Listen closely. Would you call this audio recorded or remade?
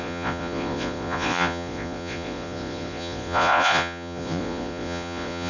remade